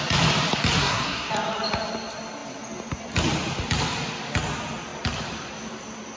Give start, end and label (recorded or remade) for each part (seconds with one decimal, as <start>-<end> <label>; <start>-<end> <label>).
0.0-0.8 recorded; 0.8-1.3 remade; 1.3-6.2 recorded